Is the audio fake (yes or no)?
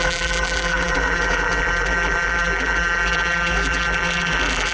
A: yes